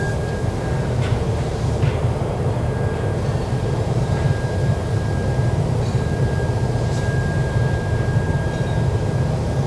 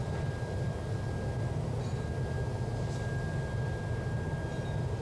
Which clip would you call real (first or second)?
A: second